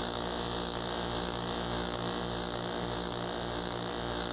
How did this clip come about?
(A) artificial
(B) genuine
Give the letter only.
B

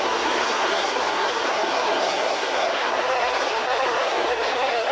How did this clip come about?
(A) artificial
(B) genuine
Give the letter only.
A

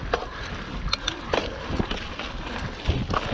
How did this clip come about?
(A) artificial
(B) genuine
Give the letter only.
B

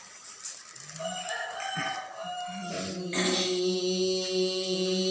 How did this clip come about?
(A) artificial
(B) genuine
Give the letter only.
B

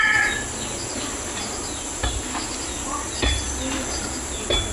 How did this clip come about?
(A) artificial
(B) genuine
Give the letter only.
B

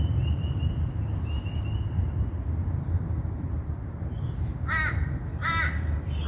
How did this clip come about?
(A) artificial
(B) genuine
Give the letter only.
B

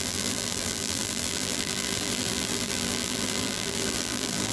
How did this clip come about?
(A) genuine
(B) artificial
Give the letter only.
B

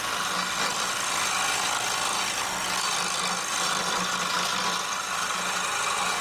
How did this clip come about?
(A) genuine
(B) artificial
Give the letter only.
A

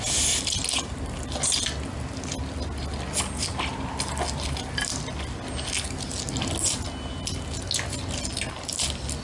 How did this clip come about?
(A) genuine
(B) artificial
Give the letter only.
A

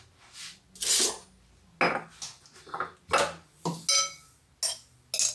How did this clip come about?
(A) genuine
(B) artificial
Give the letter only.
A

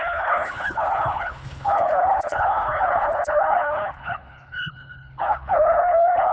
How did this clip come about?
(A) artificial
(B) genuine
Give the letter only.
A